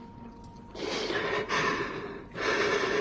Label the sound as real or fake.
real